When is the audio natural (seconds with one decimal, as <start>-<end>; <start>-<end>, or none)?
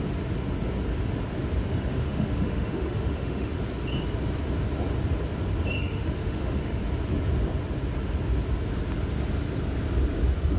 0.0-1.7; 3.5-5.8; 6.8-10.6